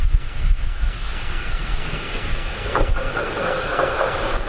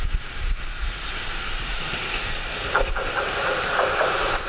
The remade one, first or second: first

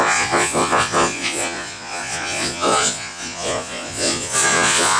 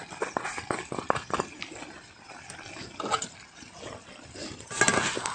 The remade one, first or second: first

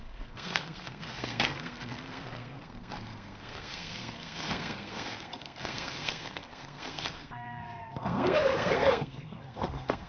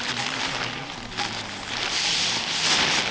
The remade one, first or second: first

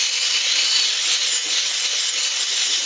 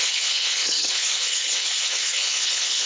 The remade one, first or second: second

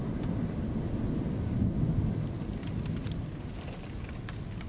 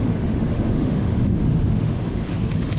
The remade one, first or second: second